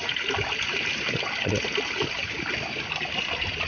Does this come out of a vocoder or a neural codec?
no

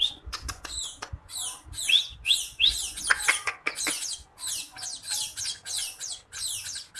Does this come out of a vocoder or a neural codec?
yes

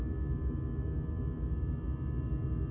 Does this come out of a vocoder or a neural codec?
no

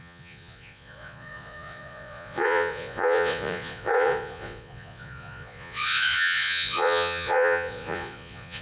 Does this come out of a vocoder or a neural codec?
yes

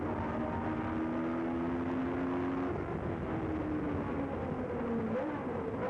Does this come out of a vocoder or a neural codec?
no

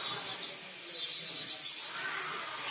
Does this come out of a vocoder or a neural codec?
no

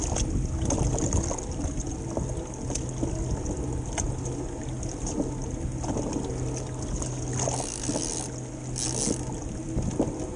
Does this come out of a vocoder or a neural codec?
no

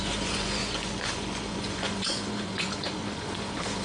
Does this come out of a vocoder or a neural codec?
yes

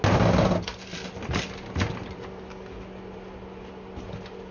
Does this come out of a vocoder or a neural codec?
no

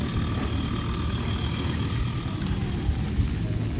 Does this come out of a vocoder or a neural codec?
no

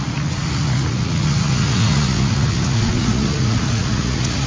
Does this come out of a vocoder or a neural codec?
yes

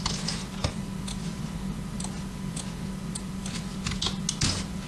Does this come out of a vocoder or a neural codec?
no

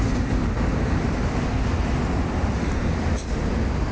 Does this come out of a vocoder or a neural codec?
no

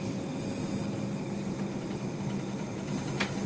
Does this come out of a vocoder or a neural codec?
no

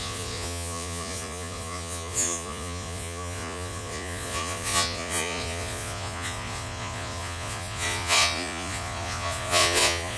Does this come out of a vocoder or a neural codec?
yes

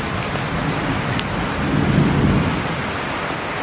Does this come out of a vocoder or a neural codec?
no